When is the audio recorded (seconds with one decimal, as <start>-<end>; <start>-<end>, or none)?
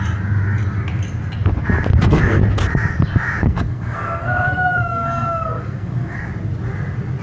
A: 0.0-1.9; 2.4-3.4; 6.3-7.2